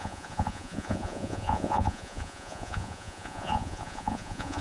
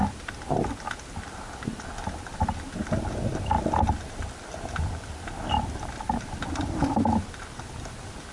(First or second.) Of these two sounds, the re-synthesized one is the first